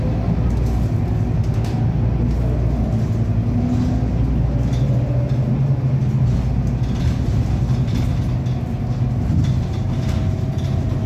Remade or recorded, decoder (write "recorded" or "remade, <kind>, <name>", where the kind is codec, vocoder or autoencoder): recorded